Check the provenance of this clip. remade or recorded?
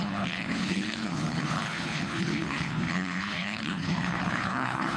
remade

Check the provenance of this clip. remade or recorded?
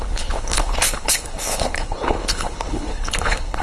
remade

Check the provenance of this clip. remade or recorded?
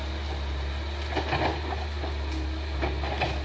recorded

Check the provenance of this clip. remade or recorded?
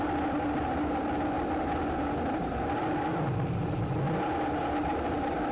recorded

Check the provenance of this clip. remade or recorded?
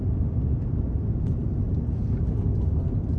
recorded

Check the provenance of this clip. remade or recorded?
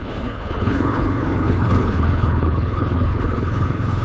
remade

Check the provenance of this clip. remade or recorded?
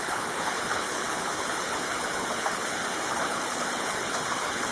remade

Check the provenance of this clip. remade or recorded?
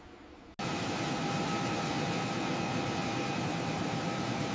recorded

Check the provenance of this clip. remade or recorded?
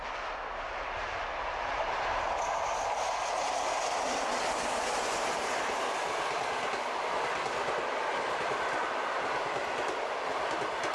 recorded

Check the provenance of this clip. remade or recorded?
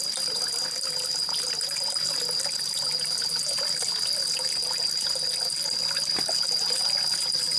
recorded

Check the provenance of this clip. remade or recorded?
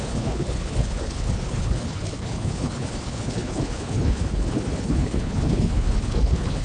remade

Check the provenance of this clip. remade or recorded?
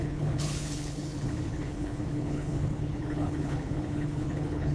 remade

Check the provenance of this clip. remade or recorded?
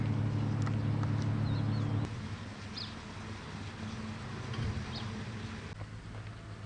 recorded